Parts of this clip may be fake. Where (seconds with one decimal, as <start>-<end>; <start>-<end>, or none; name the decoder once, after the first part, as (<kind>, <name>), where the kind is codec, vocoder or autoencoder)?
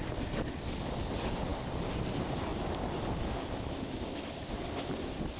none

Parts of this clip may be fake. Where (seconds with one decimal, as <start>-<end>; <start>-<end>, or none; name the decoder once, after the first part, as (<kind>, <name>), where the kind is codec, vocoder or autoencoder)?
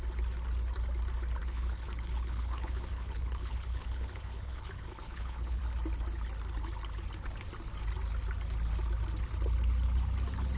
1.4-5.6 (codec, HILCodec)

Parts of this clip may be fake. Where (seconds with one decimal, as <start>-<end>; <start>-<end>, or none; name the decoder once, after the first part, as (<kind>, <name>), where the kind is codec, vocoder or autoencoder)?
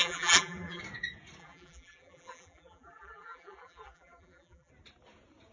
0.0-0.8 (vocoder, BigVGAN v2); 1.4-4.7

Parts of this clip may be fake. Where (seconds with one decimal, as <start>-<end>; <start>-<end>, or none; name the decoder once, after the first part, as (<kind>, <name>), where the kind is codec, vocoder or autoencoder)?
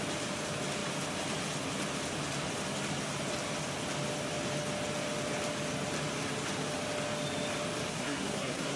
7.9-8.8 (codec, SNAC)